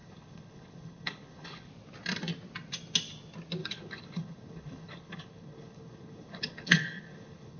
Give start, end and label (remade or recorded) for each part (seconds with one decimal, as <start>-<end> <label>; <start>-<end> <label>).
0.0-1.7 remade; 1.7-3.6 recorded; 3.6-7.6 remade